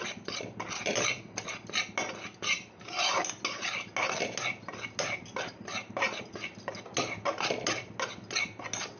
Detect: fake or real real